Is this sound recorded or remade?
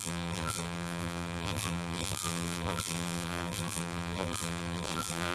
remade